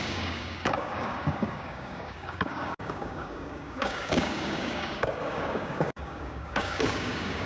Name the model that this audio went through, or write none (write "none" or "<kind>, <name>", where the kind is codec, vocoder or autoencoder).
codec, DAC